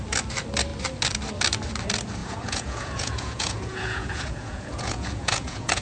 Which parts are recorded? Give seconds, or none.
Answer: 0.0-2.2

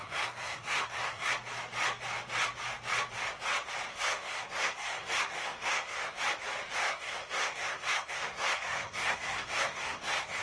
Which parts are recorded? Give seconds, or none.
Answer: 1.3-3.9; 6.2-6.8

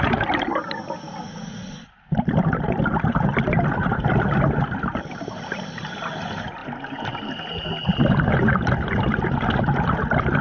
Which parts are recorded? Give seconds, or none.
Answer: 0.0-10.4

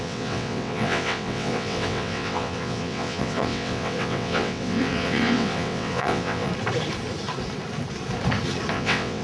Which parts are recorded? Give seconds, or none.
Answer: 6.5-8.7

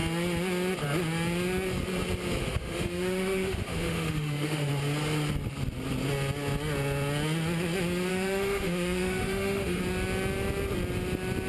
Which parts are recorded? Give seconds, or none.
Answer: 0.0-2.4; 4.7-8.1; 9.8-11.5